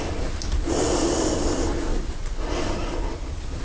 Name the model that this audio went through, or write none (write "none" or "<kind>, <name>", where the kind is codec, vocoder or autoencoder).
none